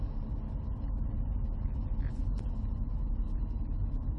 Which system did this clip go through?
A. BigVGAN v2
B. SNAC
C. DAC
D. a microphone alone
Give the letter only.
D